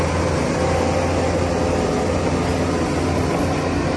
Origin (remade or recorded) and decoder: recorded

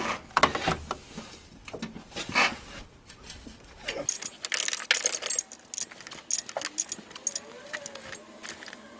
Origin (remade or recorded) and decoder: recorded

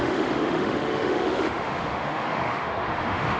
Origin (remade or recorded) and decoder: remade, autoencoder, DAC-VAE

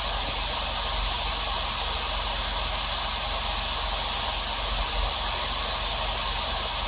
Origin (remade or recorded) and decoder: recorded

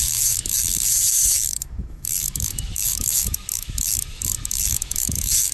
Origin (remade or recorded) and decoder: remade, autoencoder, DAC-VAE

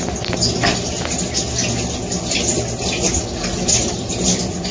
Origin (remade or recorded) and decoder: recorded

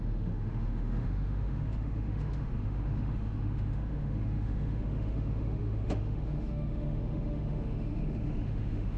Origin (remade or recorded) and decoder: remade, autoencoder, DAC-VAE